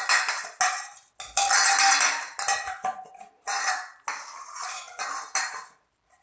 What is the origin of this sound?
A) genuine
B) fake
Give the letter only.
A